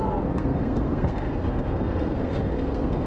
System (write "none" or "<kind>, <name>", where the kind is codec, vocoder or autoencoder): codec, SNAC